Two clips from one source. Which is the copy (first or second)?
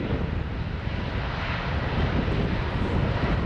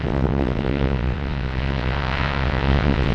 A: second